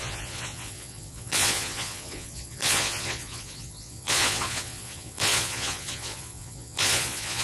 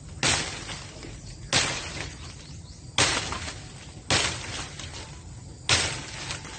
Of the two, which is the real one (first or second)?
second